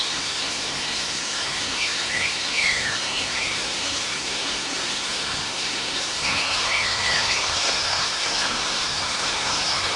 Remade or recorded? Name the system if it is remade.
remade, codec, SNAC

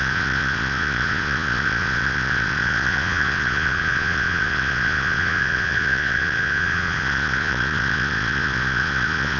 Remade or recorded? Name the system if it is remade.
remade, vocoder, Vocos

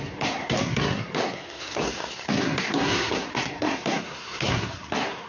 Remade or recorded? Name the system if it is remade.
remade, codec, SNAC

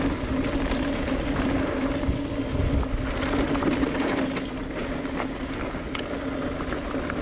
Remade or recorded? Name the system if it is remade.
recorded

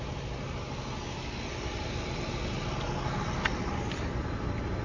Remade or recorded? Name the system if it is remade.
recorded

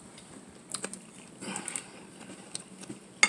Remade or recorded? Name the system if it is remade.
recorded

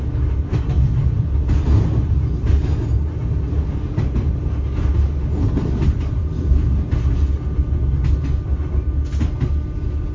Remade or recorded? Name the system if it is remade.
recorded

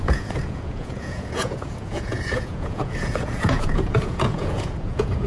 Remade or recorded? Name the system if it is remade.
remade, vocoder, Vocos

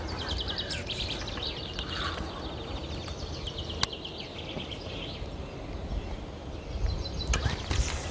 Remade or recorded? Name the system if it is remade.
recorded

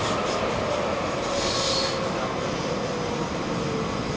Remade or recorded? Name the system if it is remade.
recorded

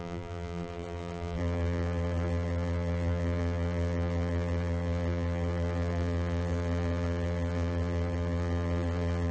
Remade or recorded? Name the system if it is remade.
remade, vocoder, BigVGAN v2